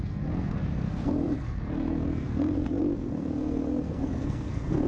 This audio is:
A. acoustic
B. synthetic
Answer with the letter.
B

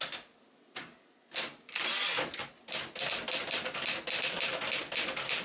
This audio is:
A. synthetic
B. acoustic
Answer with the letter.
B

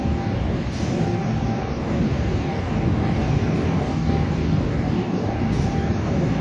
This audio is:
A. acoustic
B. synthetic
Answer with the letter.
B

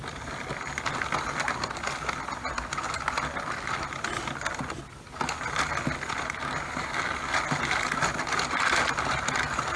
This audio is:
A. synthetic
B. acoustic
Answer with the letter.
B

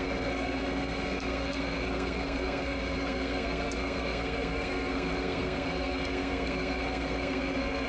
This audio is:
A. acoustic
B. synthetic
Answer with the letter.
B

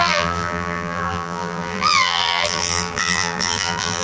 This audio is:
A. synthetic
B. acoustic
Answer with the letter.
A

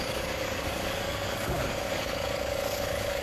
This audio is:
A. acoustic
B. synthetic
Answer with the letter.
B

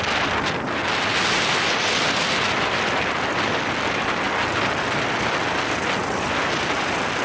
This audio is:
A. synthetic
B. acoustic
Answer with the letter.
B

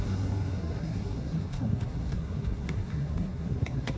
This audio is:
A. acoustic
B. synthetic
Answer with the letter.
B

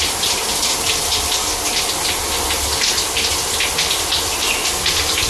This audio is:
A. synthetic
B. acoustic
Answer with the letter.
B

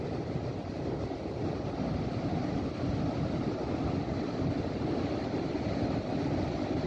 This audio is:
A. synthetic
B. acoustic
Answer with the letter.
B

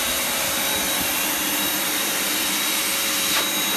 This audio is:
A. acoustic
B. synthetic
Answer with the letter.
A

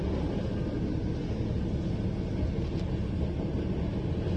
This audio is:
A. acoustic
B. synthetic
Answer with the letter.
A